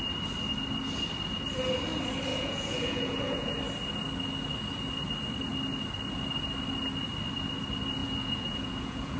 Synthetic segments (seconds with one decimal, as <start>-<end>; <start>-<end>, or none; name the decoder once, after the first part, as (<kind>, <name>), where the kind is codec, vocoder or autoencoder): 2.3-3.5 (vocoder, Vocos); 8.0-9.2